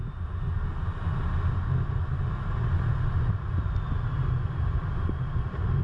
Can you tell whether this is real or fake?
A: real